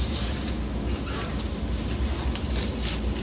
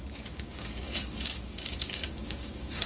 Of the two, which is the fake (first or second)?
second